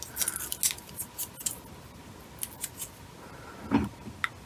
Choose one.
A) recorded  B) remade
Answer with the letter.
A